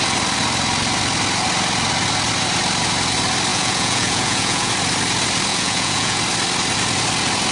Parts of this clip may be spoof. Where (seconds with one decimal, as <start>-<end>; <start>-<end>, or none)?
3.5-4.7; 5.5-6.2

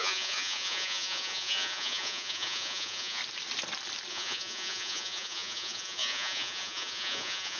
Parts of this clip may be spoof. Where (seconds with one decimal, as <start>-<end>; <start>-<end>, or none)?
0.0-3.2; 4.1-7.6

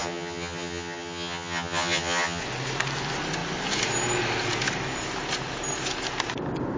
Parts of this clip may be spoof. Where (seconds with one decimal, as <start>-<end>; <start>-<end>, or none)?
0.0-2.4

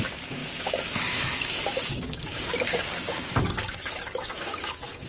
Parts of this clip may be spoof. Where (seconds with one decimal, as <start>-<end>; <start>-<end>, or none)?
0.0-5.1

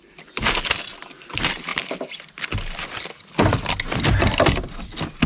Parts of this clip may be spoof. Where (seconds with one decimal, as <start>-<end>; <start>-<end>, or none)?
none